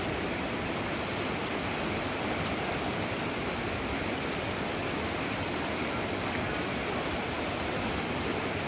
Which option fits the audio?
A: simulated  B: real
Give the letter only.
B